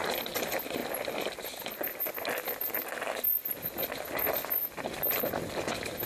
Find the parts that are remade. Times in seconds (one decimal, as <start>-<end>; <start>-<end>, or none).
none